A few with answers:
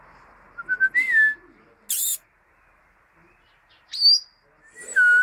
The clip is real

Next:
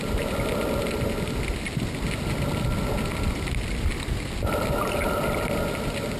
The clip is real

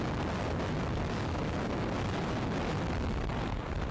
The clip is real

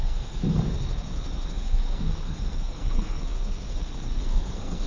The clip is fake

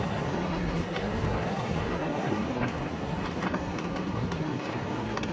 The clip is fake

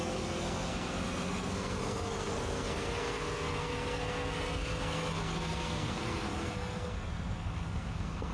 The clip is fake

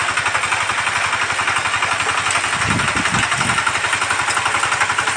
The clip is real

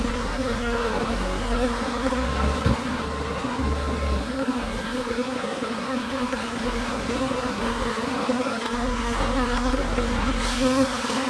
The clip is fake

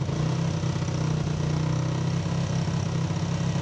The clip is real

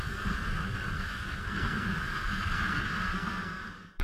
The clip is fake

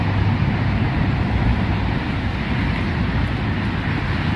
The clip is real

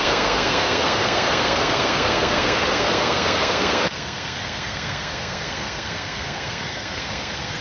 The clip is fake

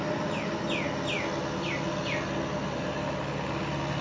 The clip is real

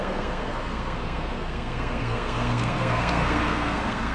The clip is fake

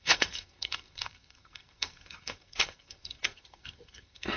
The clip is fake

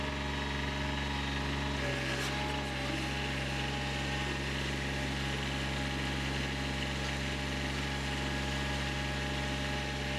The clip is real